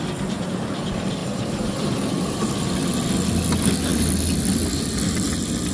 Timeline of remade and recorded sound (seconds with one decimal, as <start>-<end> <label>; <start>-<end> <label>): 0.0-1.2 recorded; 1.2-2.4 remade; 2.4-5.7 recorded